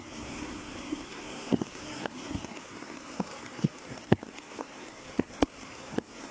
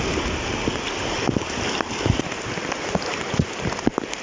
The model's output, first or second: first